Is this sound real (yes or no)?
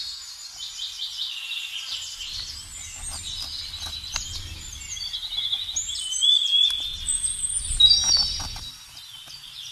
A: yes